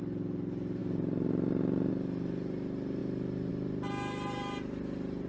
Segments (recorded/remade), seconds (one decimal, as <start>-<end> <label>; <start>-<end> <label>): 0.0-5.3 recorded